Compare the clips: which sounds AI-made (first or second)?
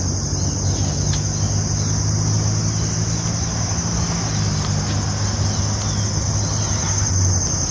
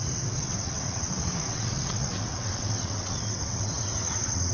second